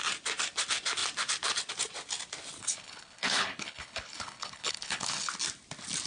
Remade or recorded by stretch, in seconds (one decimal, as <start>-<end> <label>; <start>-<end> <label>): 0.0-2.6 recorded; 2.6-5.3 remade; 5.3-6.1 recorded